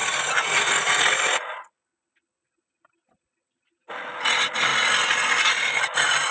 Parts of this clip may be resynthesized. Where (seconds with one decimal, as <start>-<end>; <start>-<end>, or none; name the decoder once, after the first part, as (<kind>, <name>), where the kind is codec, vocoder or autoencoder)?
1.1-4.7 (vocoder, BigVGAN v2); 5.6-6.3